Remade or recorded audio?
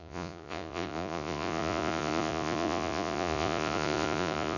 remade